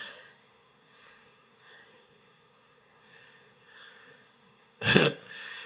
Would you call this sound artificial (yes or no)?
yes